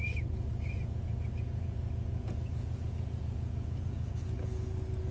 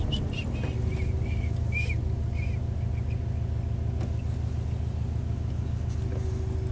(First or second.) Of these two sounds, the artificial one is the first